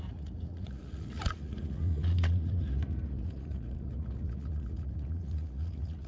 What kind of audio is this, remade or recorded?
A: remade